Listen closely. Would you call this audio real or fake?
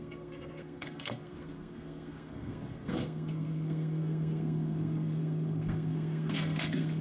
fake